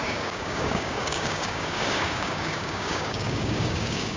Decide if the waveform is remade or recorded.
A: remade